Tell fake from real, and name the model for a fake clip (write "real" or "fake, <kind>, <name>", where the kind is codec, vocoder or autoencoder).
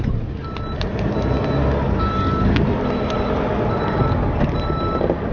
real